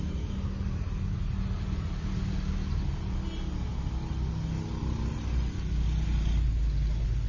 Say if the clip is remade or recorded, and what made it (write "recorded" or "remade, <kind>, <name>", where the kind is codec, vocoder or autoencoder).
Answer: recorded